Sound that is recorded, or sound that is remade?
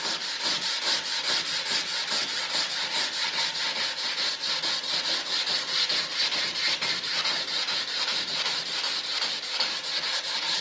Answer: recorded